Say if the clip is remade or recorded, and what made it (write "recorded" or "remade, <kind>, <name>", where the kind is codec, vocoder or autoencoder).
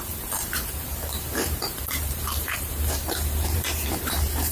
remade, vocoder, BigVGAN v2